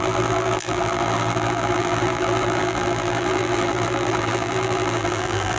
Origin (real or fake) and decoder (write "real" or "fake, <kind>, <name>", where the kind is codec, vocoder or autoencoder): fake, vocoder, BigVGAN v2